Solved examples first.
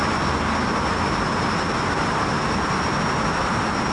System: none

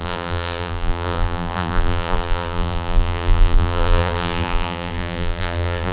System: vocoder, BigVGAN v2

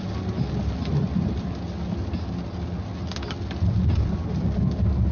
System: none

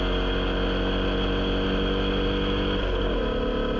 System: none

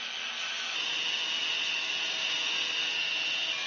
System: none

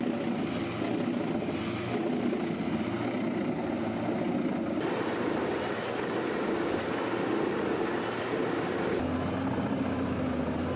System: none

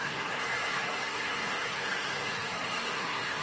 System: codec, SNAC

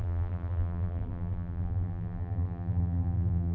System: vocoder, BigVGAN v2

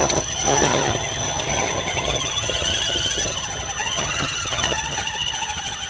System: vocoder, HiFi-GAN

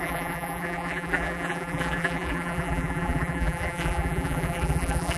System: vocoder, BigVGAN v2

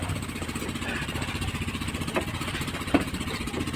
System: vocoder, BigVGAN v2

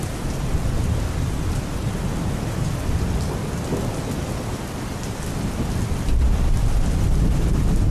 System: none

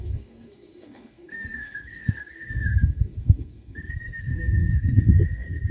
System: codec, SNAC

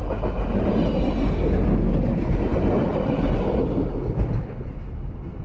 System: none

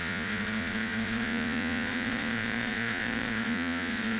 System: vocoder, Vocos